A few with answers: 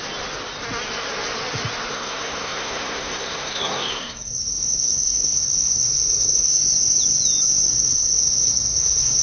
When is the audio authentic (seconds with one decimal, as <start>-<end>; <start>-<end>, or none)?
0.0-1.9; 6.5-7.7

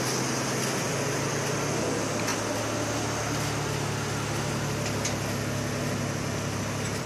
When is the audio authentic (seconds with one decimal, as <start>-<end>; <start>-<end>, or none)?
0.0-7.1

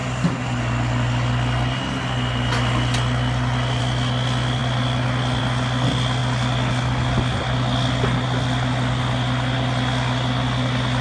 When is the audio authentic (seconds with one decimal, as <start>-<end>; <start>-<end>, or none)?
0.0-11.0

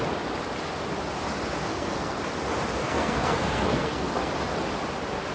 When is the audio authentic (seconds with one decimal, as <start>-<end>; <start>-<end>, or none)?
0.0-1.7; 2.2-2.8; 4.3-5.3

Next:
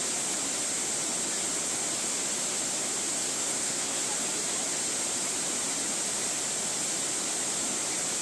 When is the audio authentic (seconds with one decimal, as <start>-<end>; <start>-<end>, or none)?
0.0-3.3; 4.0-8.2

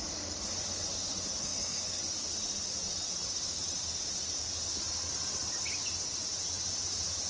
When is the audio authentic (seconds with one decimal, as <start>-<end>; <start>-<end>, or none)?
0.0-1.4; 2.0-7.3